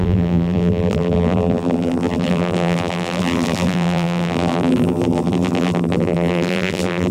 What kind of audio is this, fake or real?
fake